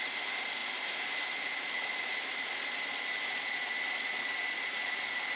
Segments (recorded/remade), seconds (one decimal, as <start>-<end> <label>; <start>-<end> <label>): 0.0-5.4 recorded